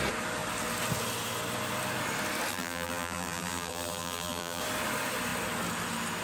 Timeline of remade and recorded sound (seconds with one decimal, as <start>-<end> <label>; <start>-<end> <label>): 0.0-2.5 recorded; 2.5-4.6 remade; 4.6-6.2 recorded